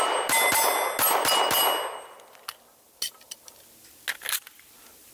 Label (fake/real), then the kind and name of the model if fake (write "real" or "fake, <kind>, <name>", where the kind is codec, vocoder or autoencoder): real